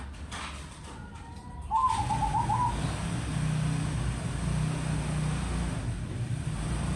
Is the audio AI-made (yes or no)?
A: no